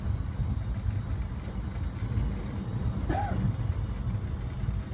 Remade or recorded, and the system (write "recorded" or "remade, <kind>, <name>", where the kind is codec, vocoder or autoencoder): recorded